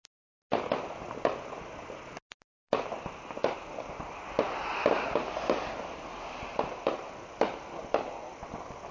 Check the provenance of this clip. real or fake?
real